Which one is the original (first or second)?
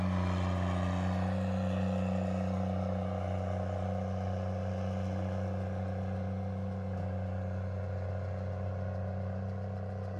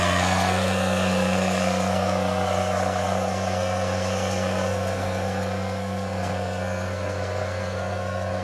first